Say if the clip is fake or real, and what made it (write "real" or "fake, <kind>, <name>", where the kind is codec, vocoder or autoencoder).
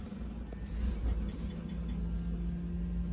real